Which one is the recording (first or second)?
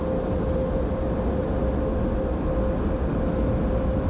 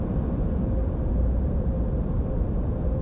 first